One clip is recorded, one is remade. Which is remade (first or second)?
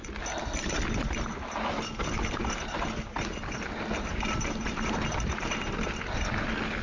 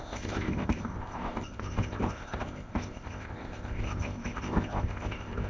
second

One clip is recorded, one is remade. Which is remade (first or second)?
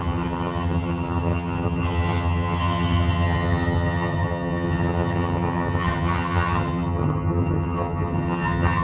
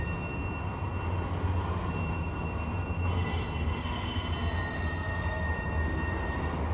first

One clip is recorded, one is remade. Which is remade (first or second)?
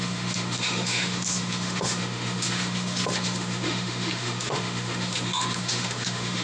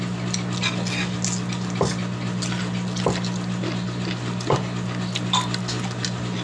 first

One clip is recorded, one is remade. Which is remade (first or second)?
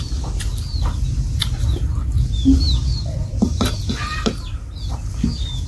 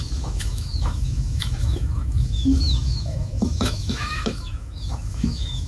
second